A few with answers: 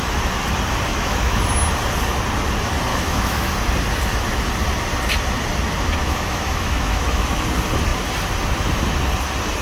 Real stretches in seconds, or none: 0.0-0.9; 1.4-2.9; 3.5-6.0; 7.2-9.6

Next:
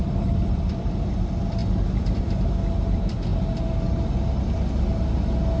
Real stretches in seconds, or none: 1.1-1.6; 2.2-5.6

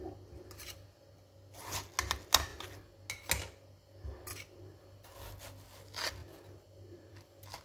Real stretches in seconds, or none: 0.0-7.6

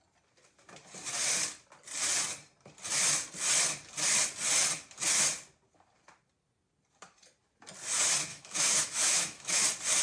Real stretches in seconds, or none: 0.0-8.3; 9.6-10.0

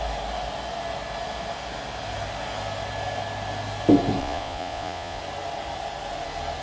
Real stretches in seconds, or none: 0.0-4.2; 5.2-6.6